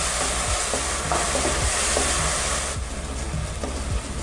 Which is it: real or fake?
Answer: real